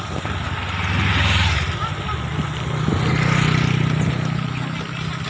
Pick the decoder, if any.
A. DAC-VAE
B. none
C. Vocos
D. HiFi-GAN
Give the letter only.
B